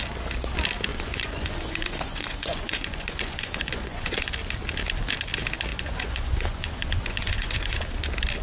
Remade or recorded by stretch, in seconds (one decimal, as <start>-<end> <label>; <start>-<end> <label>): 0.0-0.9 recorded; 0.9-4.3 remade; 4.3-5.7 recorded; 5.7-7.8 remade; 7.8-8.4 recorded